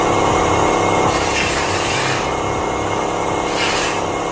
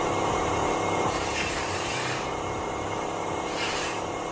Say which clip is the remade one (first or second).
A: second